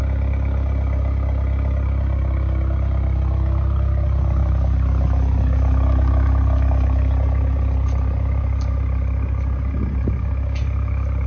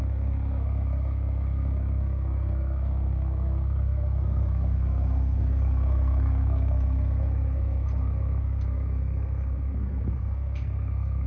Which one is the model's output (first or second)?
second